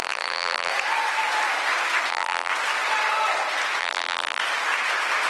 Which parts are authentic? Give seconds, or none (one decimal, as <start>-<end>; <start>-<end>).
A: 0.7-2.1; 2.5-3.8; 4.4-5.3